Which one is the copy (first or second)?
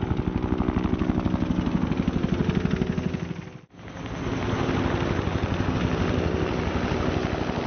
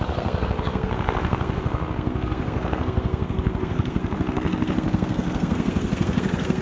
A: second